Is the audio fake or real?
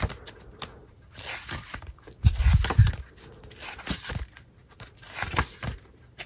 real